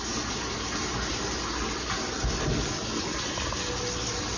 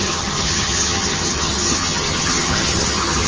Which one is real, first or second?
first